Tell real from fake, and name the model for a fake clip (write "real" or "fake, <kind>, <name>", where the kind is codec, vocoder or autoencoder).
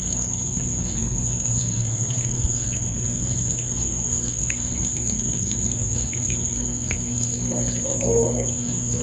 fake, codec, SNAC